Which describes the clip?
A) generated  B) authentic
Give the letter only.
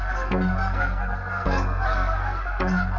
A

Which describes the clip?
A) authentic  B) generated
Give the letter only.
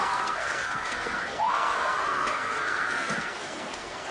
B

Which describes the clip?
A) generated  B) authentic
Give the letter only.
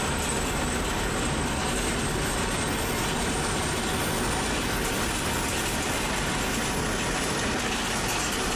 B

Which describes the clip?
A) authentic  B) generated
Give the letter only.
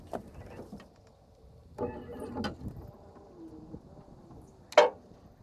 A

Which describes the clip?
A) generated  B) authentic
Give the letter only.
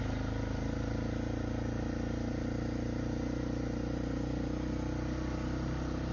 B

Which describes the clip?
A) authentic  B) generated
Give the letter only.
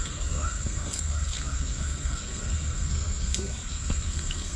B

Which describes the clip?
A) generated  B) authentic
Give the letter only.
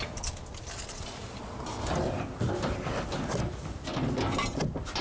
B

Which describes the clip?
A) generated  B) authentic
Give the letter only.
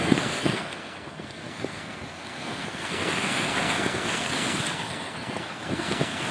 A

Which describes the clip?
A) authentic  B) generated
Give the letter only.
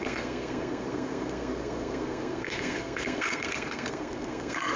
B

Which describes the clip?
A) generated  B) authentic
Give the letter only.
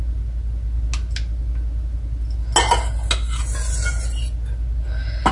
B